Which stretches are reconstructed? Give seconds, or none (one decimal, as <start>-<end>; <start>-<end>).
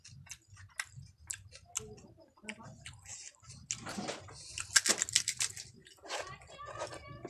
none